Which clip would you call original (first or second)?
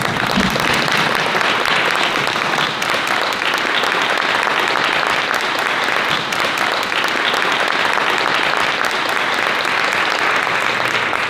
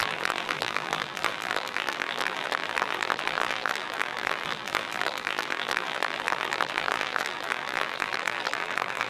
first